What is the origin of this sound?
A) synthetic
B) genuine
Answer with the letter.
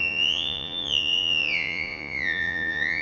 A